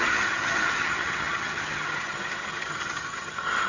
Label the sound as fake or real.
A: fake